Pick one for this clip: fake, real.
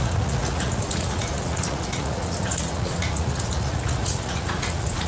fake